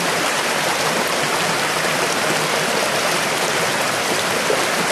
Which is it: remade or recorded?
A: remade